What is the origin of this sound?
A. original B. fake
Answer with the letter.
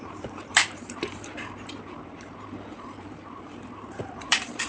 B